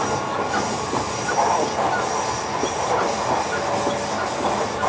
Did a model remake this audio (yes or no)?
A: no